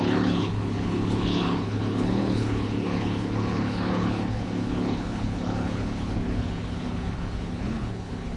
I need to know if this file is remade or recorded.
remade